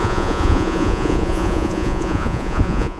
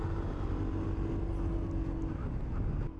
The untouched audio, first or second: second